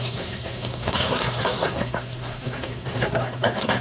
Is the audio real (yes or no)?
no